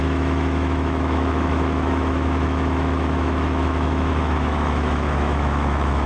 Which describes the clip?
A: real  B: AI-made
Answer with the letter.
B